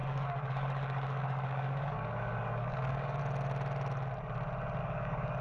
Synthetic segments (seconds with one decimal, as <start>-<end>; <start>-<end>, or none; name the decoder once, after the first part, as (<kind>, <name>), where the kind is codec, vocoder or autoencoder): 0.0-3.2 (codec, DAC); 4.8-5.4